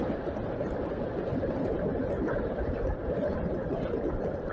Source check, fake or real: real